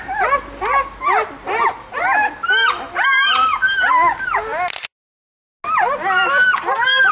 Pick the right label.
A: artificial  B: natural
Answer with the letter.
B